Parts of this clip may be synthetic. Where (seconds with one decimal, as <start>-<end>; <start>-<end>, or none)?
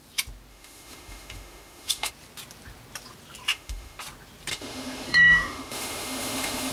0.5-2.1; 3.5-4.0; 4.5-6.7